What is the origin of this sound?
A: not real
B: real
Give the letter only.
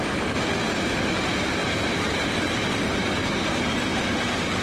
A